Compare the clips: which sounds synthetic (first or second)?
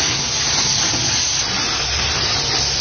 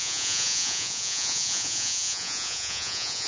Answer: second